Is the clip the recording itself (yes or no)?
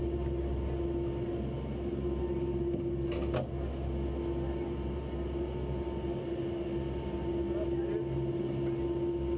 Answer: yes